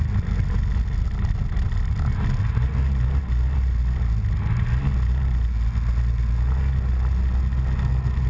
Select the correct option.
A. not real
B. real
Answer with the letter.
B